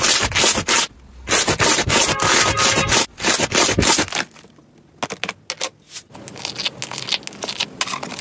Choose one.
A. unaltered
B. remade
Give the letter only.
A